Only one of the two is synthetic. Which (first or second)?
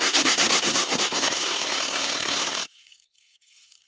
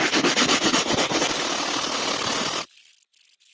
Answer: first